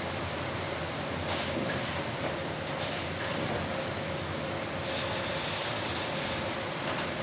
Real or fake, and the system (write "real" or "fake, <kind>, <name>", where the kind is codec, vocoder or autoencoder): real